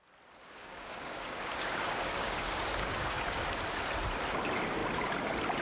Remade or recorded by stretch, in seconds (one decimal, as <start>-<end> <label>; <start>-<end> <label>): 0.0-0.4 recorded; 0.4-3.4 remade; 3.4-5.6 recorded

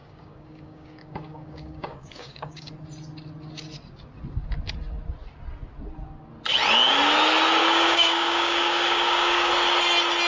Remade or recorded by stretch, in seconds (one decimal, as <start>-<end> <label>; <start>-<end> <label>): 0.0-2.7 remade; 2.7-7.6 recorded; 7.6-9.5 remade; 9.5-10.3 recorded